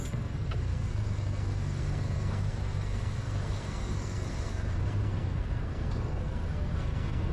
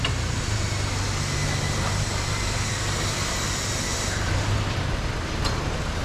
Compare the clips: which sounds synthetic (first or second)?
first